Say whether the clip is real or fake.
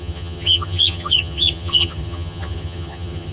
fake